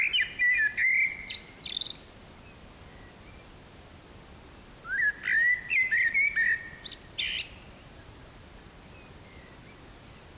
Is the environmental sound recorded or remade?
recorded